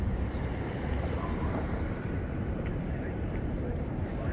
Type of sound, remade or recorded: remade